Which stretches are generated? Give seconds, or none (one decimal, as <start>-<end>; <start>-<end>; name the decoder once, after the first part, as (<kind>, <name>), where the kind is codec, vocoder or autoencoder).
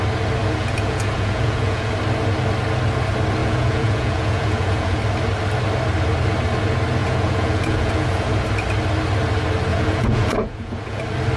0.4-1.9 (vocoder, Vocos); 3.4-5.0; 7.0-8.4; 9.7-11.0